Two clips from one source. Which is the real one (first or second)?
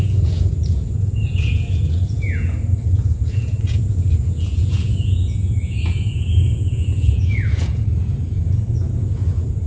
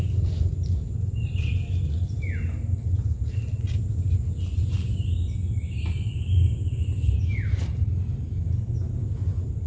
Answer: second